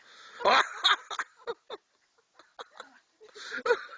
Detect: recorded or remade recorded